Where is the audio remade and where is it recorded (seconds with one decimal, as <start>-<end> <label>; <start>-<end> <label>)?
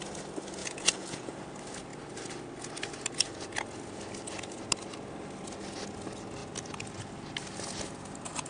0.0-0.6 recorded; 0.6-1.4 remade; 1.4-8.5 recorded